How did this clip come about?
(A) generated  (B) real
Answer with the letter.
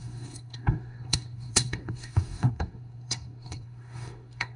A